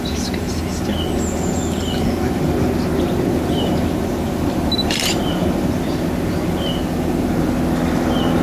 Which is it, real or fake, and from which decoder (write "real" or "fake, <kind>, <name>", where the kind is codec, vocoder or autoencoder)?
real